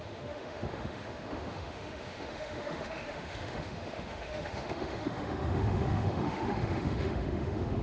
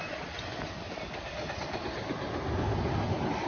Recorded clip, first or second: second